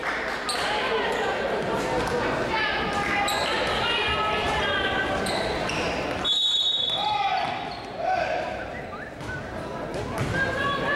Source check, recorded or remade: recorded